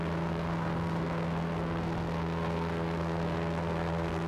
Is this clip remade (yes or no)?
yes